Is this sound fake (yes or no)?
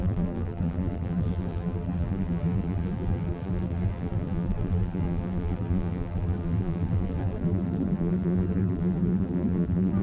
yes